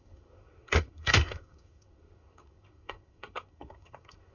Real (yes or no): no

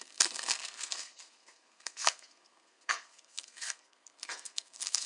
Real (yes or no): no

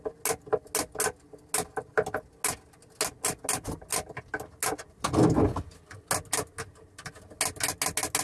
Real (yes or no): yes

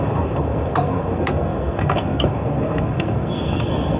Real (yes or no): no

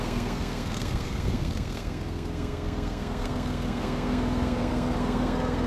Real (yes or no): no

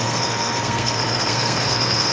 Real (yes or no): no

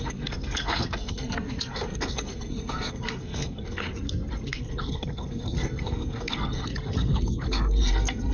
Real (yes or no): no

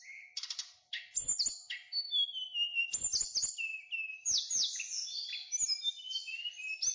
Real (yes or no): yes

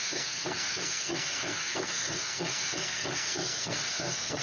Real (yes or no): no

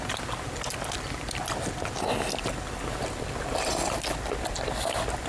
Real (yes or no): yes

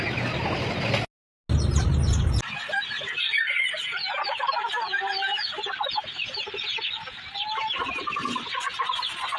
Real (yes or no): yes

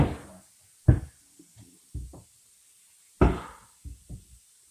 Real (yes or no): yes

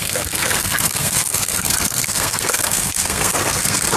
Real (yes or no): no